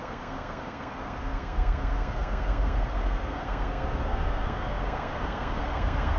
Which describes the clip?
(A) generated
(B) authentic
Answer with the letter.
A